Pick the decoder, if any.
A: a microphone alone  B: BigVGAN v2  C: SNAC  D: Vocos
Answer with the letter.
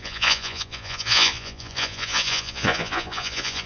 D